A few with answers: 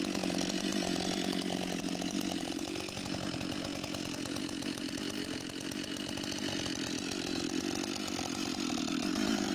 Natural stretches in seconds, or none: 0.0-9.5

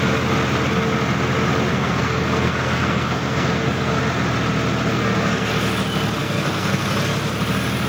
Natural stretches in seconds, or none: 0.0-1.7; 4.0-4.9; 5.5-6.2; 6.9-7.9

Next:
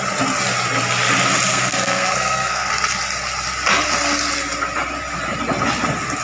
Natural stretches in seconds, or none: 0.0-1.5; 2.7-6.2